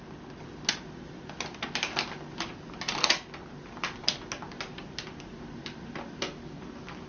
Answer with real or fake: real